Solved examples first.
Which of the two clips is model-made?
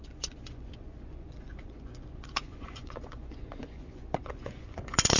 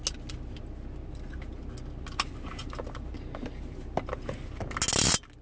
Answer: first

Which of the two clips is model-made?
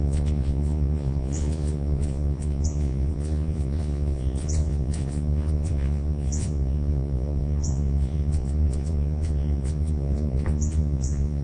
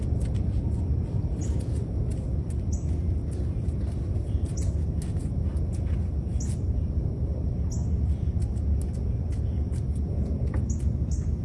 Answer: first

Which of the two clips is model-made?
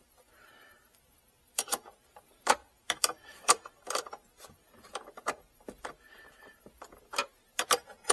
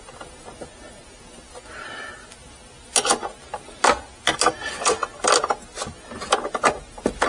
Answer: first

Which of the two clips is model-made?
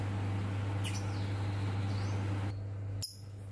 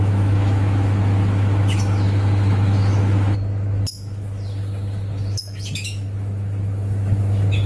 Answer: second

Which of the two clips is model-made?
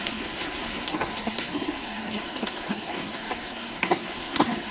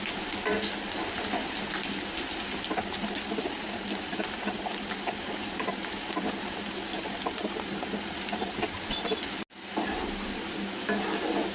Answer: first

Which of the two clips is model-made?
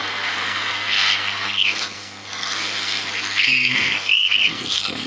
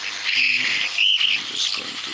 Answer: first